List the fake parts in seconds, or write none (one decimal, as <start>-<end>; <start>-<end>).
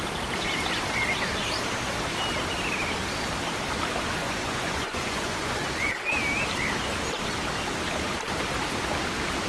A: 4.2-5.9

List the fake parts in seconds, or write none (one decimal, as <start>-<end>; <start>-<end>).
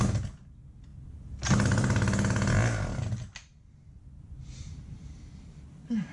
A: none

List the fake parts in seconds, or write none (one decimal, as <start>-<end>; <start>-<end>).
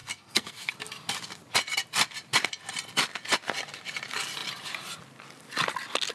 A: 0.0-0.7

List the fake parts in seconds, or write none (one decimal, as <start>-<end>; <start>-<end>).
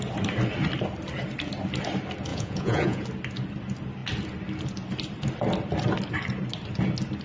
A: 2.3-3.0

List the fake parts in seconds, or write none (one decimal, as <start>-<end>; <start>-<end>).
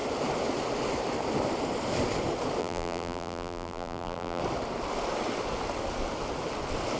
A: 2.6-4.4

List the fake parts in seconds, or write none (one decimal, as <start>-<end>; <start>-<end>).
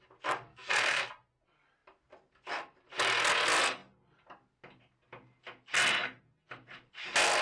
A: 0.5-1.1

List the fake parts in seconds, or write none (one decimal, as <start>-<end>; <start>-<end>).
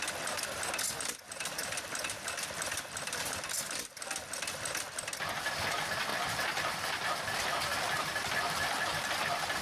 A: 1.6-5.0; 6.1-9.6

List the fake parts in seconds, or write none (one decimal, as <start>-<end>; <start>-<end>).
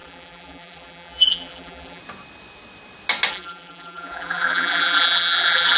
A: 0.0-2.0; 3.3-5.8